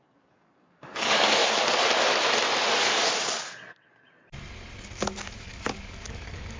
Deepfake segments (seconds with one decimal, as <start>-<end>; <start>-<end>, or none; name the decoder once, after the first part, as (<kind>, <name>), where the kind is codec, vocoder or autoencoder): 0.0-1.4 (codec, DAC); 5.4-6.6